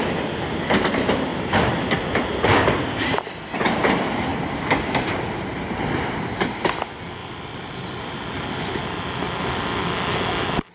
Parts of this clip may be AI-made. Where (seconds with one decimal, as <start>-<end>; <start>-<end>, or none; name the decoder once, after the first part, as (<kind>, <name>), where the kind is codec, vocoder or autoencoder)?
1.3-3.1 (vocoder, BigVGAN v2); 4.3-5.1; 7.2-8.2